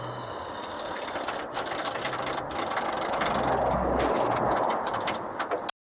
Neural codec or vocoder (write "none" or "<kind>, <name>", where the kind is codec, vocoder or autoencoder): none